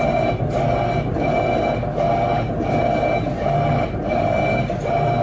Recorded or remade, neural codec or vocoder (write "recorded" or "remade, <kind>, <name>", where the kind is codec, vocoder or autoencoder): recorded